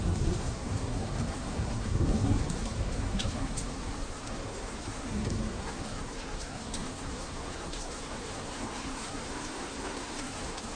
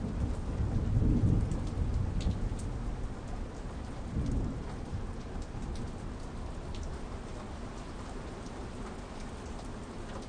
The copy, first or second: first